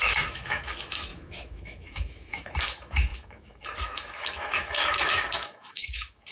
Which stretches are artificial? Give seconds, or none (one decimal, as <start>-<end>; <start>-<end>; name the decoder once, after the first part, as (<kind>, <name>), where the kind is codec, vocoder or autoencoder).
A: 0.0-6.3 (autoencoder, DAC-VAE)